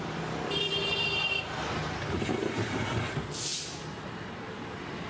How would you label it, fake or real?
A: fake